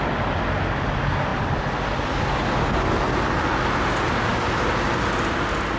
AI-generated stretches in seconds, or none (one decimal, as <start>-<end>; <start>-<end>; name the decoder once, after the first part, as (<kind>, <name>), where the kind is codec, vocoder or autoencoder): none